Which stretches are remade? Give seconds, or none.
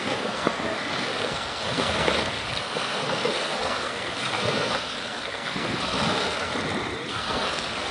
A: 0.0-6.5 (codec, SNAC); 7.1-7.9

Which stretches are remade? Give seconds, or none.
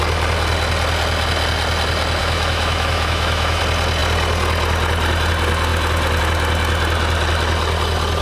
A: 2.2-3.6 (autoencoder, DAC-VAE)